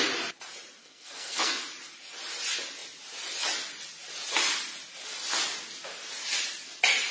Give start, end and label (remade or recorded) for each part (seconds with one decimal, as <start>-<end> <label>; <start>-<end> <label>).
0.0-0.8 recorded; 0.8-1.6 remade; 1.6-7.1 recorded